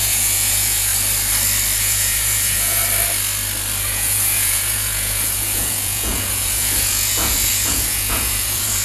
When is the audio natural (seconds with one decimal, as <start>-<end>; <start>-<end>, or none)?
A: 0.9-1.8; 2.8-3.8